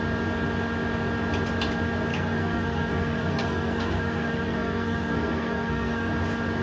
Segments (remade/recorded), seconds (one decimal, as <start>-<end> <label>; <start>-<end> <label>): 0.0-2.1 recorded; 2.1-6.1 remade; 6.1-6.6 recorded